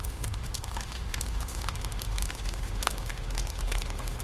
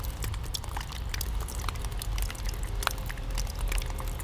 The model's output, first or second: first